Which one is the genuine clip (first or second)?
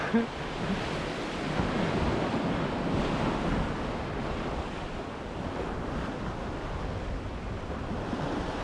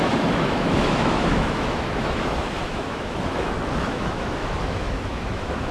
first